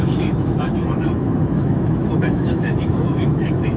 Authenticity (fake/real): fake